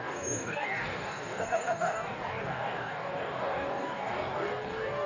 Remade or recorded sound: remade